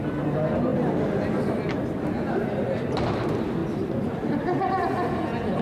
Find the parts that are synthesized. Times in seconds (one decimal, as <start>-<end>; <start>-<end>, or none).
none